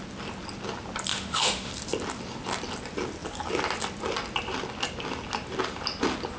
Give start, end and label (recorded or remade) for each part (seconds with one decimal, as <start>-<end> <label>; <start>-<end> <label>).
0.0-1.1 recorded; 1.1-1.7 remade; 1.7-6.4 recorded